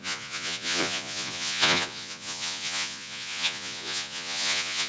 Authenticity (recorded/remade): remade